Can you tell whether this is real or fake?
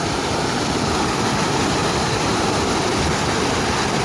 real